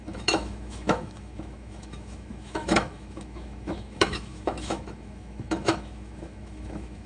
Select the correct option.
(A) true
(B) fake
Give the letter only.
B